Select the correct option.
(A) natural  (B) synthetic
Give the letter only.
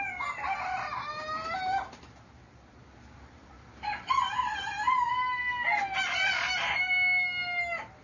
A